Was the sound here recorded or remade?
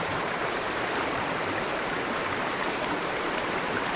remade